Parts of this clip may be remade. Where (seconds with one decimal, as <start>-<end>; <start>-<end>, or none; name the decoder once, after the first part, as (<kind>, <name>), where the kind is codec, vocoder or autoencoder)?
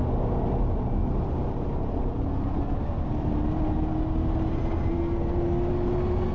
4.9-5.7 (codec, SNAC)